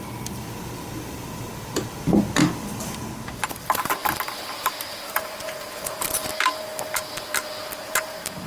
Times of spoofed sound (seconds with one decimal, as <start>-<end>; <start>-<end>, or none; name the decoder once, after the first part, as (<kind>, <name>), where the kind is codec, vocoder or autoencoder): 4.0-6.3 (vocoder, BigVGAN v2)